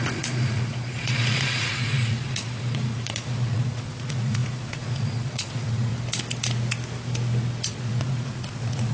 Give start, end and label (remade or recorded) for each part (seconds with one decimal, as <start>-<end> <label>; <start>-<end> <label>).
0.0-5.9 remade; 5.9-7.7 recorded; 7.7-8.9 remade